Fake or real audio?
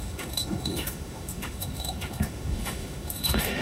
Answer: fake